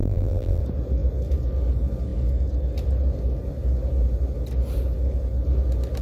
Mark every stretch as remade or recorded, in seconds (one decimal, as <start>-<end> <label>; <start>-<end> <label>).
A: 0.0-0.6 remade; 0.6-6.0 recorded